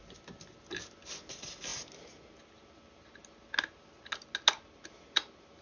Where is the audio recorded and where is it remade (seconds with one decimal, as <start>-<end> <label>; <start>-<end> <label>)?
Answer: 0.0-5.6 recorded